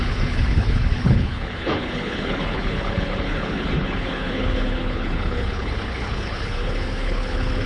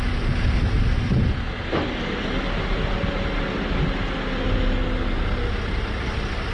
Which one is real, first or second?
second